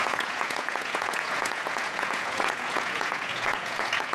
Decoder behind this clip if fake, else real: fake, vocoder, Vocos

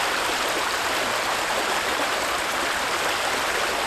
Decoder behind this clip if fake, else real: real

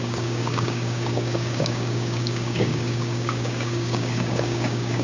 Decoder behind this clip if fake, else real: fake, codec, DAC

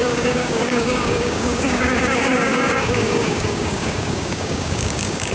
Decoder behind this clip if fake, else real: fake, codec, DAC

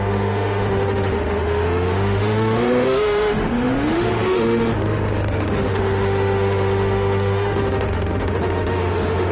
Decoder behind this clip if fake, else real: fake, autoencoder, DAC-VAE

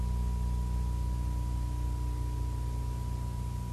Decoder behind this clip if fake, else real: real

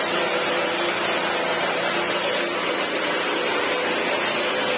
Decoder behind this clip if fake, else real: real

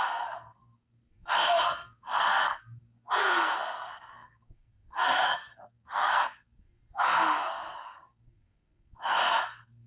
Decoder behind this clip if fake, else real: fake, codec, SNAC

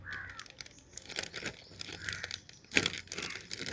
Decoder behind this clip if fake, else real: real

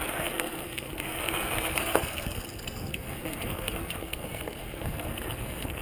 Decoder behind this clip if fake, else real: fake, codec, SNAC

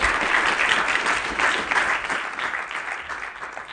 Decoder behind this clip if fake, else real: real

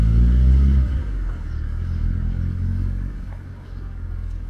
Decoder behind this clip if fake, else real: fake, codec, DAC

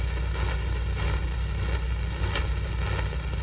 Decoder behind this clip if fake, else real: real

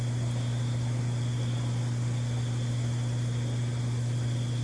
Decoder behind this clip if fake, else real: real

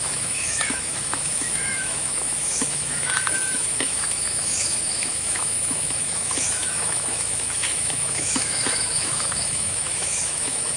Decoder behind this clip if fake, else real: fake, autoencoder, DAC-VAE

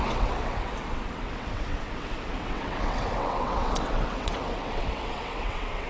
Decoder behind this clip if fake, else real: fake, vocoder, WaveNeXt